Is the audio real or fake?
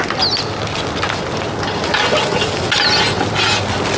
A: real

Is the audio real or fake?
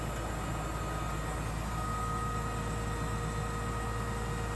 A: real